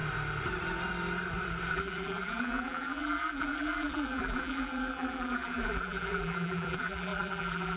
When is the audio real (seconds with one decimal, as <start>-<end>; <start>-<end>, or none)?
0.0-1.7